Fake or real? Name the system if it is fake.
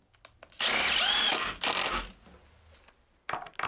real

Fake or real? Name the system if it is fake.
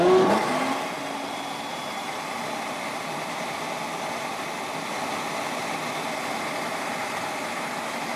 real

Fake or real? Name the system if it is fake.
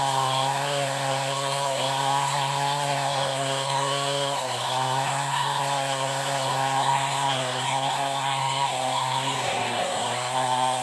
fake, codec, SNAC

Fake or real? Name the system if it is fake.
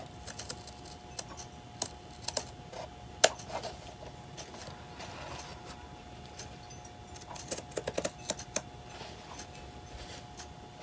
real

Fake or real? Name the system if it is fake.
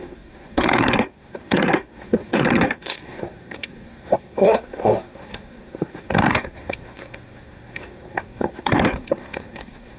fake, codec, SNAC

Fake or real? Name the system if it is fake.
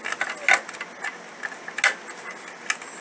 real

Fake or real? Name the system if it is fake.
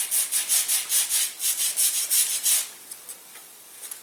real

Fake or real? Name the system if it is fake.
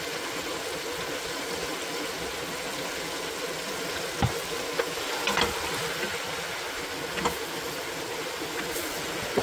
real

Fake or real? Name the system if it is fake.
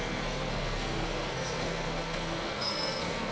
fake, codec, SNAC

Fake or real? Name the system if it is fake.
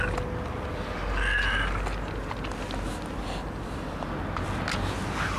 real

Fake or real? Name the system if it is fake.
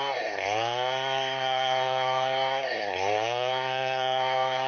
fake, codec, SNAC